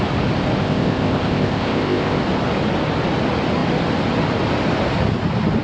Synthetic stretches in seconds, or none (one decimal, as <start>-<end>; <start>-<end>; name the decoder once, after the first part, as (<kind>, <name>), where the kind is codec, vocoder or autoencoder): 0.6-2.2 (codec, ZipCodec)